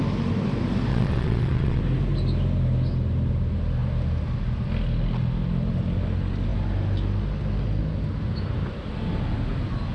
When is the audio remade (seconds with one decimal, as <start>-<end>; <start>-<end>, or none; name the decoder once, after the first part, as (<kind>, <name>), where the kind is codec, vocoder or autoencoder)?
0.9-1.8 (vocoder, Vocos)